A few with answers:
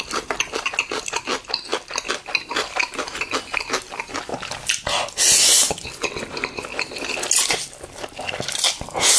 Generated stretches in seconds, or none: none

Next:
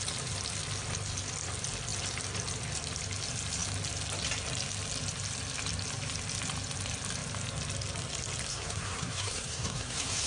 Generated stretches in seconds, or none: 8.5-10.3 (codec, SNAC)

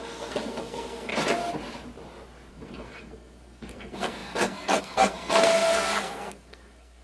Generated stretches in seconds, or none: 0.0-1.1 (codec, SNAC); 2.5-7.0

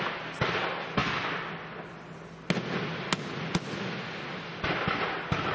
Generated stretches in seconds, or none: none

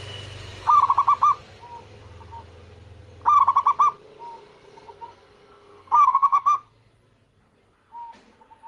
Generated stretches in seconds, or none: 4.7-6.7 (codec, SNAC)

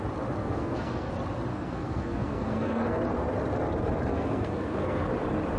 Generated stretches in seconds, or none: 0.4-1.1 (codec, SNAC); 1.5-3.0; 4.1-5.0

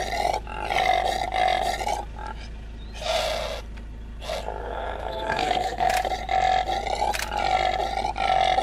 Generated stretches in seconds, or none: 4.6-5.9 (codec, SNAC)

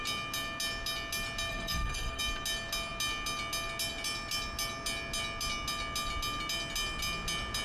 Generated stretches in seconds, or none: 1.5-2.2 (codec, SNAC)